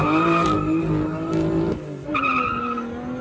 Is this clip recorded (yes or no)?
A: yes